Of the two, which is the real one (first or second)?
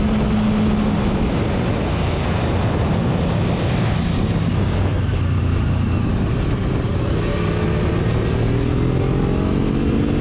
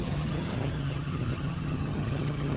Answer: first